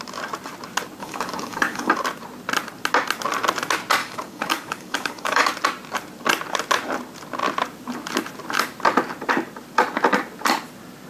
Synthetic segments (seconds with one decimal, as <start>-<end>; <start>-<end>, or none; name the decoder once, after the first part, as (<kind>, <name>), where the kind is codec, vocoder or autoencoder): 1.0-1.9 (codec, DAC); 4.0-5.5